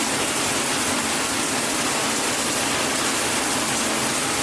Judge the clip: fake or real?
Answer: real